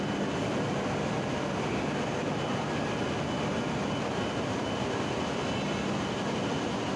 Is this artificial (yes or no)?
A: no